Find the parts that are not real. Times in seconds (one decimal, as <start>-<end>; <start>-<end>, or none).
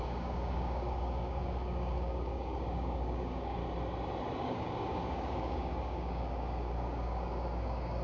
0.0-3.6; 4.4-8.0